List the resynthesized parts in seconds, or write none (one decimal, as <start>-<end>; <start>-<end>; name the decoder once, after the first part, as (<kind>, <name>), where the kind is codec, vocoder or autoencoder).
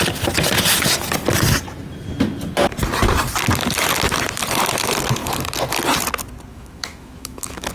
6.5-7.7 (autoencoder, DAC-VAE)